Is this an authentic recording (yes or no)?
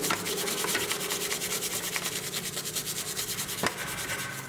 yes